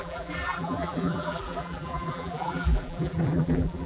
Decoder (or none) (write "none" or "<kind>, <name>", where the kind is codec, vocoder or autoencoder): vocoder, BigVGAN v2